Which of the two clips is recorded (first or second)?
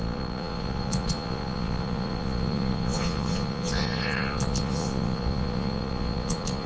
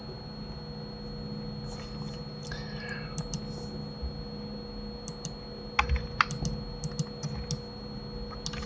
second